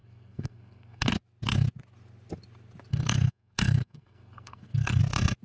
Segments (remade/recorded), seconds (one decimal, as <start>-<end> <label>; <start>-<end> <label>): 0.0-1.1 remade; 1.1-2.9 recorded; 2.9-5.0 remade; 5.0-5.4 recorded